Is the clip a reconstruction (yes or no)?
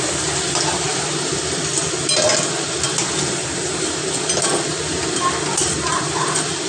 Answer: no